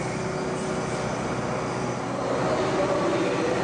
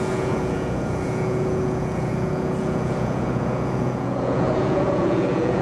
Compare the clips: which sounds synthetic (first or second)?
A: second